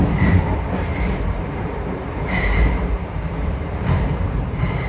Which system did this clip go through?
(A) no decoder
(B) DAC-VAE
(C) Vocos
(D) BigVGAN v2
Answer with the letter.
D